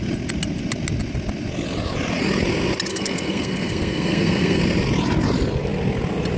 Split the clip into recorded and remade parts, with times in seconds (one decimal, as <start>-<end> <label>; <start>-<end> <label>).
0.0-2.9 recorded; 2.9-4.6 remade; 4.6-6.4 recorded